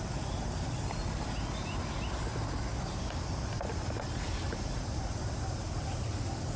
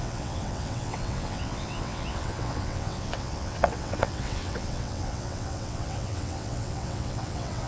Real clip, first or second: first